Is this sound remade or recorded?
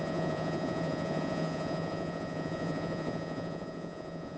remade